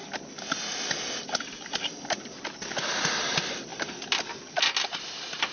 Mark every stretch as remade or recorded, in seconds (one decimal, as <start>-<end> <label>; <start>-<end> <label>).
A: 0.0-5.5 recorded